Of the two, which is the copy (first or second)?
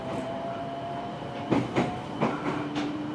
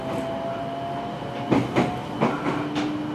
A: first